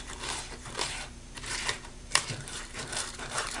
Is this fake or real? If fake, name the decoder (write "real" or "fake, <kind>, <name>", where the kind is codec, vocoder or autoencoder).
fake, vocoder, BigVGAN v2